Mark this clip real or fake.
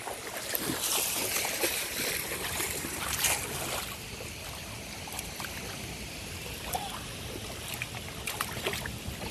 real